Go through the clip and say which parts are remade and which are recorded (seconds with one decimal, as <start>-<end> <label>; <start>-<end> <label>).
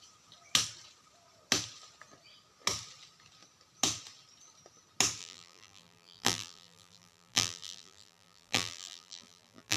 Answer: 0.0-5.2 recorded; 5.2-9.8 remade